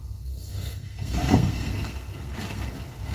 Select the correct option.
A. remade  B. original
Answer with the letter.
A